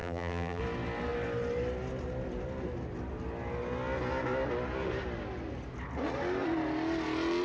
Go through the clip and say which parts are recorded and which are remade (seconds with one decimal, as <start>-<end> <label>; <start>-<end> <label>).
0.0-0.6 remade; 0.6-7.4 recorded